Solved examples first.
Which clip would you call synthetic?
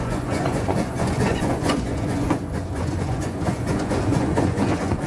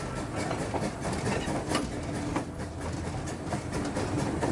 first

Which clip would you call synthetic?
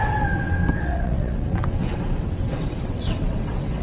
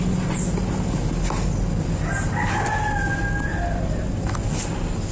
first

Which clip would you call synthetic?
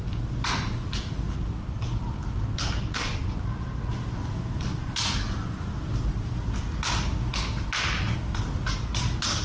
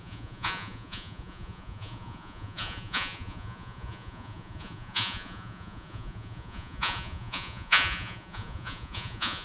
second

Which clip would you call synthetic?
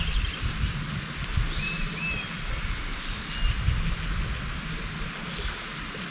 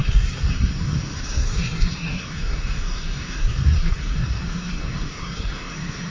second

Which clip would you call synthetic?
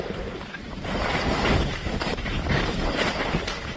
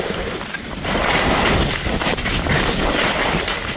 first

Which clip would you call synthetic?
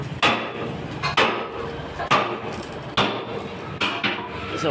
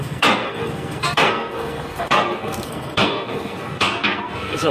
second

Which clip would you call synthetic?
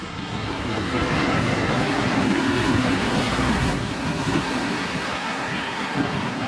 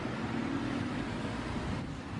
first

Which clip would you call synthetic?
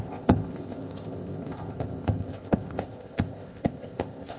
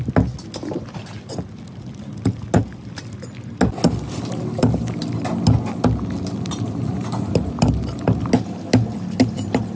first